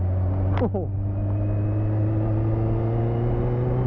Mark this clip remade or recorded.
recorded